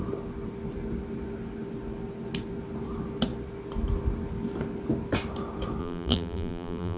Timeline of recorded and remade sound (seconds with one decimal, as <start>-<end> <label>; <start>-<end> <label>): 0.0-5.8 recorded; 5.8-7.0 remade